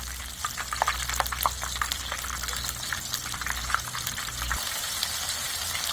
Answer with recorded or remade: recorded